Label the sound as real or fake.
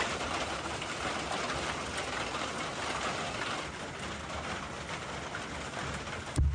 real